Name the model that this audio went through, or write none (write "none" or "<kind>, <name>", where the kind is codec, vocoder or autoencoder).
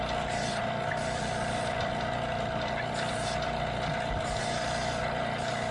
vocoder, BigVGAN v2